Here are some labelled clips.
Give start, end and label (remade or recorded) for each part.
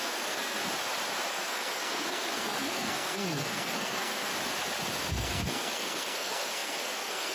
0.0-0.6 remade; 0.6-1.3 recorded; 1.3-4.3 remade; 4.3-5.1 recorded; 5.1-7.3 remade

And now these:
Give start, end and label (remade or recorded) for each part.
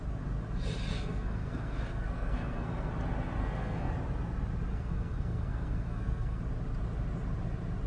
0.0-0.9 recorded; 0.9-2.9 remade; 2.9-3.4 recorded; 3.4-3.9 remade; 3.9-4.7 recorded; 4.7-6.4 remade; 6.4-7.9 recorded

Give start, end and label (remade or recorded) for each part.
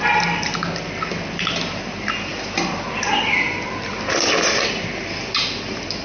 0.0-6.0 recorded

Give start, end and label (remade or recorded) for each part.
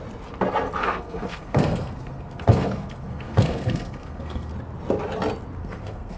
0.0-0.8 recorded; 0.8-4.5 remade; 4.5-5.6 recorded; 5.6-6.2 remade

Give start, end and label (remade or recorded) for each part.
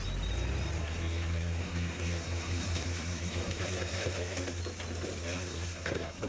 0.0-0.8 recorded; 0.8-4.6 remade; 4.6-5.2 recorded; 5.2-6.3 remade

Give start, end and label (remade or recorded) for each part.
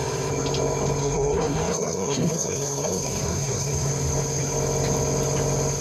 0.0-1.0 recorded; 1.0-3.9 remade; 3.9-5.8 recorded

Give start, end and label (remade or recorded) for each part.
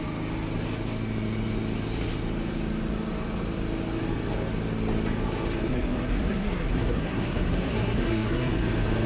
0.0-5.7 recorded; 5.7-8.5 remade; 8.5-9.1 recorded